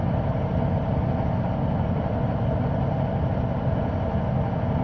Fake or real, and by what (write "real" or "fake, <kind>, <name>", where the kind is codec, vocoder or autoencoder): real